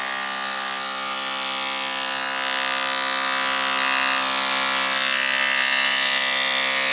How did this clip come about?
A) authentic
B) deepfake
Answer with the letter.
A